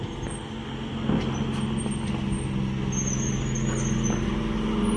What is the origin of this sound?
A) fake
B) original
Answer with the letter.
B